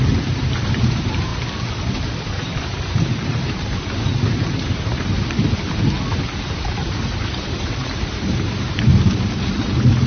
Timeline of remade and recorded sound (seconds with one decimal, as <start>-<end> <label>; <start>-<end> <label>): 0.0-1.3 remade; 1.3-2.2 recorded; 2.2-4.9 remade; 4.9-6.6 recorded; 6.6-10.1 remade